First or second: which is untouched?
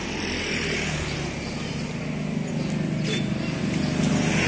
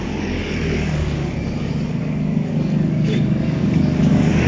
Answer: first